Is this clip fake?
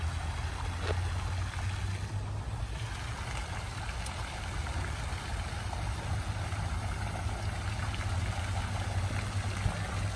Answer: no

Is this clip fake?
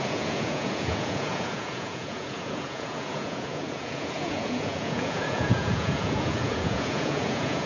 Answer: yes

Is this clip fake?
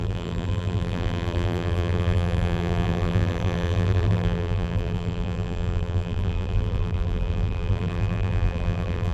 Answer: yes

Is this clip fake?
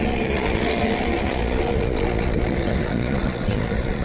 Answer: yes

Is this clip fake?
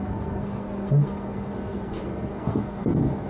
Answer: yes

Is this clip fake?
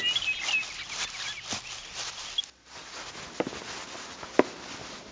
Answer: no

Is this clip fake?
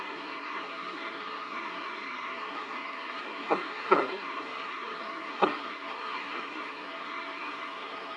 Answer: yes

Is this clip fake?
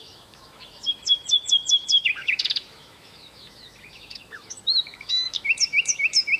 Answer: yes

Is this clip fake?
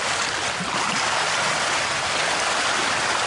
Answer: no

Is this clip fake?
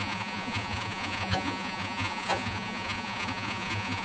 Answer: yes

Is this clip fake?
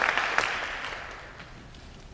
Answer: no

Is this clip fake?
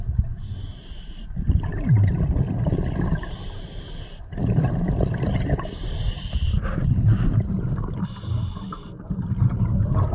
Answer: no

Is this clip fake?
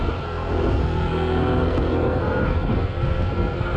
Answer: yes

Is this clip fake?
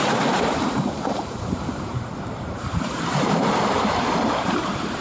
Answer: yes